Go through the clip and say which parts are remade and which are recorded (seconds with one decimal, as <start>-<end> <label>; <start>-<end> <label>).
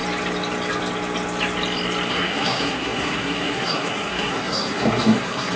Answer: 0.0-2.1 recorded; 2.1-5.6 remade